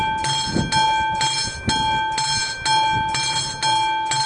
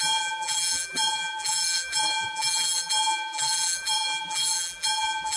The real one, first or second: first